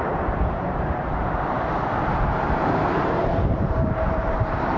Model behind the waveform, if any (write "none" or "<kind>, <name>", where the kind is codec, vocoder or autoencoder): vocoder, BigVGAN v2